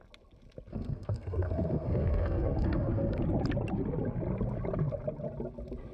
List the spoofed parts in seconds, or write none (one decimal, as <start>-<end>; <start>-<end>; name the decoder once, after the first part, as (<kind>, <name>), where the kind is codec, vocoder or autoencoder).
0.7-3.2 (codec, SNAC)